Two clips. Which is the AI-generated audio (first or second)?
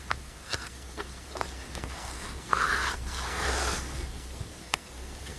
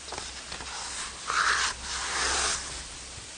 first